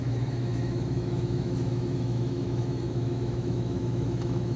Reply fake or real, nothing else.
fake